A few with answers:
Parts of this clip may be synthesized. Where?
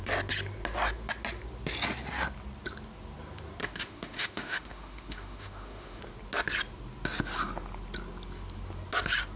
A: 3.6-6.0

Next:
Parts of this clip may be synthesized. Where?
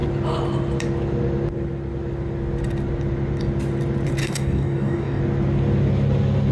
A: 4.2-5.2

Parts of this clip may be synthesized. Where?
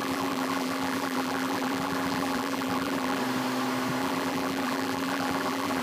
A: 0.0-3.2; 4.0-5.8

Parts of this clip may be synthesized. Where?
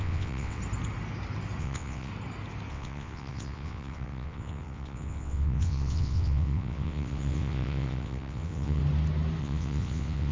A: 0.0-0.6; 1.6-2.1; 2.7-8.8; 9.4-10.3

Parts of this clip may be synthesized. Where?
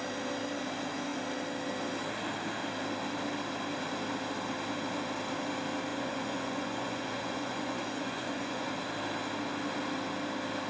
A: 5.9-8.7